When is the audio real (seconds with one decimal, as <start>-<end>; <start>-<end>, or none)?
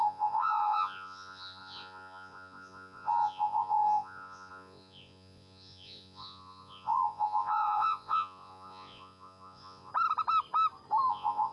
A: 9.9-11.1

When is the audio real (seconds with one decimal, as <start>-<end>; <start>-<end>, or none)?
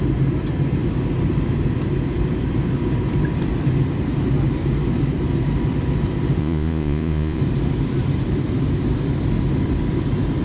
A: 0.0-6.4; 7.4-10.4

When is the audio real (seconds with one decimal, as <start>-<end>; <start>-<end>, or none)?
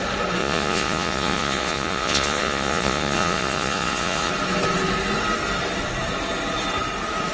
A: 0.0-0.4; 4.3-7.3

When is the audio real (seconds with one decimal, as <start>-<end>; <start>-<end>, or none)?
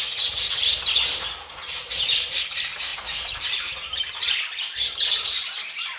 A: 0.0-6.0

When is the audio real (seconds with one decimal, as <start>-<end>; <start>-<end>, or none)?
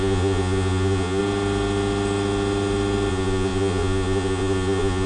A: 1.2-3.1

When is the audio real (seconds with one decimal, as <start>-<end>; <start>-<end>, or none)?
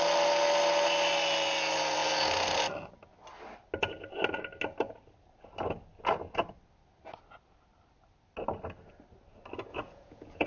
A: 0.0-9.7